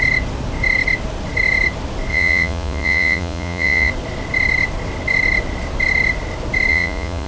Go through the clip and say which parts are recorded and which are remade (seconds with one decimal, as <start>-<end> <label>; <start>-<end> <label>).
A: 0.0-2.1 recorded; 2.1-3.9 remade; 3.9-6.7 recorded; 6.7-7.3 remade